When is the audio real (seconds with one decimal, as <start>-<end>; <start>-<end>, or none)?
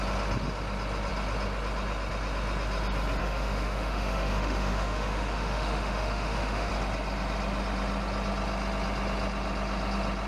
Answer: 0.0-3.2; 6.7-10.3